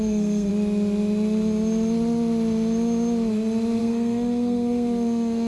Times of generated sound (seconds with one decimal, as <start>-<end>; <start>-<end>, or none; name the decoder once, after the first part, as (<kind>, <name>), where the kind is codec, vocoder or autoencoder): 0.0-0.5 (codec, SNAC); 3.8-5.5